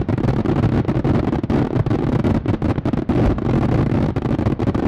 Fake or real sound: real